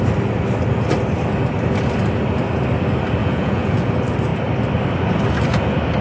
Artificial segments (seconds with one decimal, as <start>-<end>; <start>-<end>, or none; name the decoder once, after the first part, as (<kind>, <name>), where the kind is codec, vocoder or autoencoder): 3.2-3.9 (vocoder, Vocos)